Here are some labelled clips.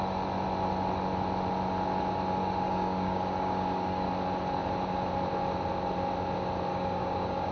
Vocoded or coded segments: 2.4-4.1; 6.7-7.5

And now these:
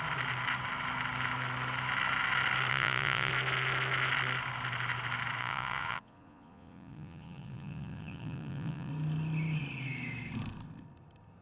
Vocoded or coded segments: 2.7-3.3; 5.4-8.9

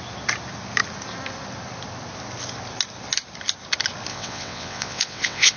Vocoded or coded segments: 4.1-5.6

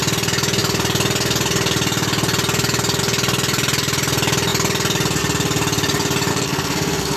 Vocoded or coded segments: 6.3-7.2

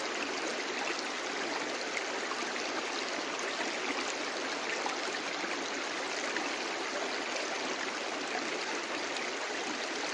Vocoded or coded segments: none

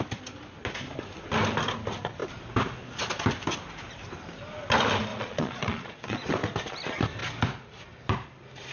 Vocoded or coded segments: 5.1-6.3

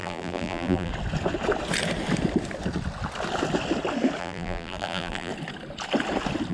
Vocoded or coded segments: 0.0-0.9; 4.2-5.3